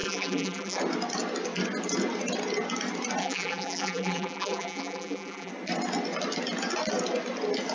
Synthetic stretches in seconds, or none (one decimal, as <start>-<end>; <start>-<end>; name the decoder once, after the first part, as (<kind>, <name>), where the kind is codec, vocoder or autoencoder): 0.0-0.8 (vocoder, BigVGAN v2); 3.2-5.5